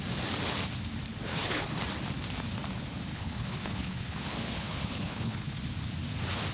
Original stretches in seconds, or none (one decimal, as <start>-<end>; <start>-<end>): 0.0-1.3; 1.8-3.1; 5.6-6.5